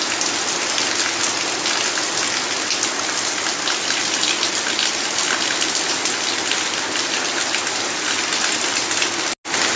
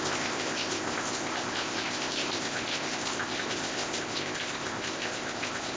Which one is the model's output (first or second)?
second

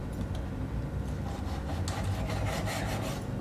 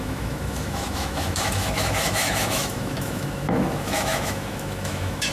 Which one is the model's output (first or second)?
second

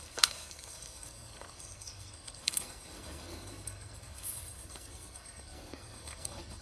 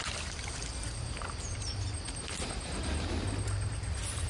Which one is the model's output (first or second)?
first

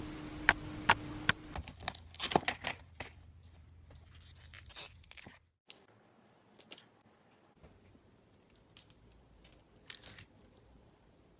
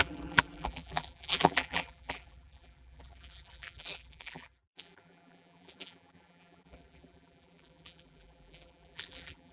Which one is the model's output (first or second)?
second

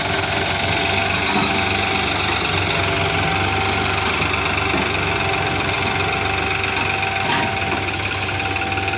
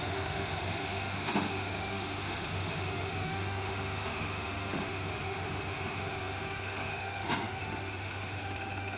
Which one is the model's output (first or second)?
second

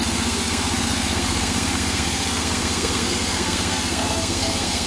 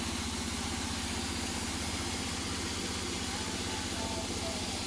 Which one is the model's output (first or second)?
first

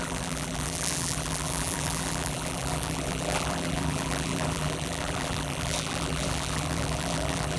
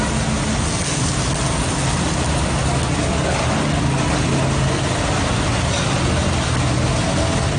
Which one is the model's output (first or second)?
first